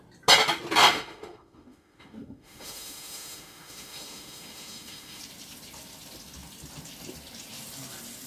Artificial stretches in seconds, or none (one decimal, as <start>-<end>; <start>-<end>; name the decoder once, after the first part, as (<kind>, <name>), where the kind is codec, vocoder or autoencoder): 0.8-5.2 (autoencoder, DAC-VAE)